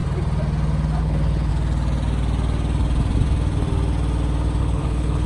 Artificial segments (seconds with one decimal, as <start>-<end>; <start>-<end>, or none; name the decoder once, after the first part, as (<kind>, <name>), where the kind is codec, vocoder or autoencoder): 1.0-1.5 (codec, HILCodec); 4.6-5.3